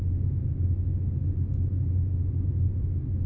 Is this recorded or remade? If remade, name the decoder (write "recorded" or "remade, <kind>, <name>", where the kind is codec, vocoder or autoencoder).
recorded